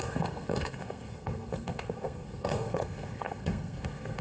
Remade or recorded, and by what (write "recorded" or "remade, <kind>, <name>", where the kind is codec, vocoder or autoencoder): remade, codec, SNAC